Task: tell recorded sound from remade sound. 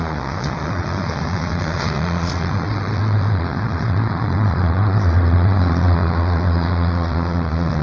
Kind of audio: remade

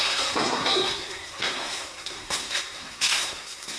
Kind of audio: remade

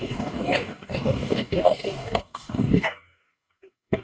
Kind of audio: remade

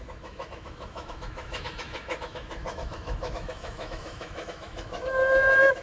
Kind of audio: remade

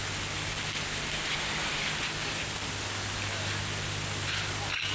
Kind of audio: recorded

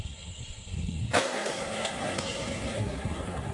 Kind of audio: remade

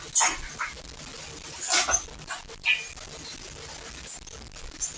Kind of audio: recorded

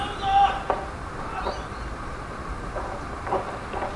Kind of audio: recorded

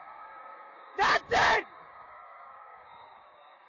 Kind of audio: remade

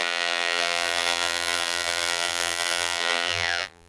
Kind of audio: remade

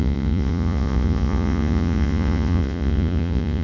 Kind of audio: remade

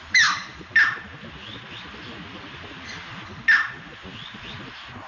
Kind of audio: recorded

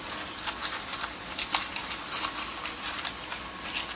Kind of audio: recorded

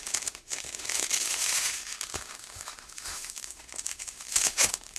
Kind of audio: remade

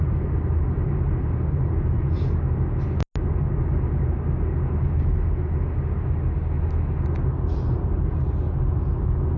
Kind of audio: recorded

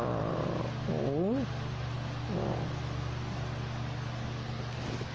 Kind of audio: recorded